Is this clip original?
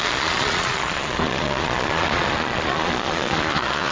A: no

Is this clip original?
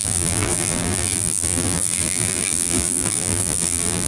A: no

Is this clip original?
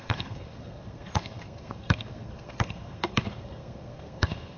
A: no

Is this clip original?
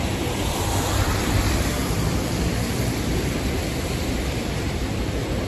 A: no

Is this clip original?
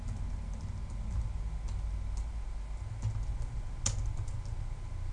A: yes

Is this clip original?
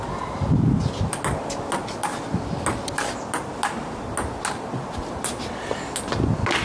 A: yes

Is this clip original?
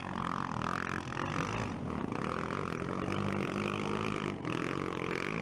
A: yes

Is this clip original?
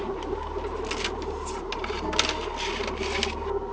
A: yes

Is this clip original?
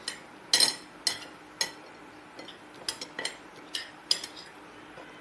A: yes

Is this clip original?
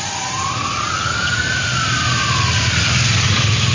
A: yes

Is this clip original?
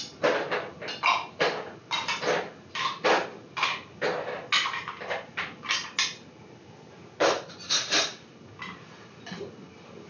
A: yes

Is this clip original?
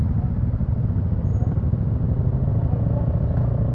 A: yes